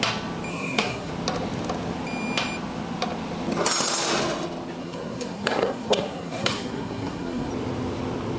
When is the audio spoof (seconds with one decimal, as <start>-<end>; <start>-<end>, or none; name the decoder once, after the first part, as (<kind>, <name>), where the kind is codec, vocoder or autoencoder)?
0.5-1.1 (codec, SNAC); 4.8-7.5